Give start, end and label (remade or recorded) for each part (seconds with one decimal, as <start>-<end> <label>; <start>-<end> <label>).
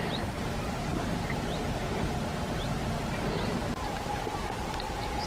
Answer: 0.0-0.9 remade; 0.9-4.1 recorded; 4.1-5.3 remade